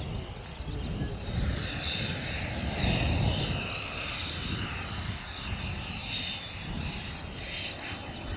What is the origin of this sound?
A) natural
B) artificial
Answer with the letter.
A